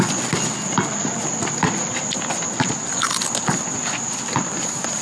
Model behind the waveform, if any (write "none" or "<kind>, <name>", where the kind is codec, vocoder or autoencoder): none